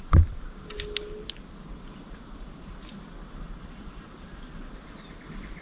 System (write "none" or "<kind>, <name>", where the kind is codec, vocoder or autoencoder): none